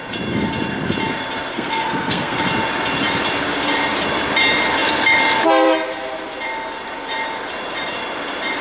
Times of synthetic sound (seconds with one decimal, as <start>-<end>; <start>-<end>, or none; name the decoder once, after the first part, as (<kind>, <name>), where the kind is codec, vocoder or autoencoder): 1.5-2.4 (codec, SNAC)